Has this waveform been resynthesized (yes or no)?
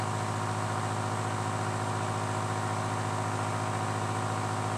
no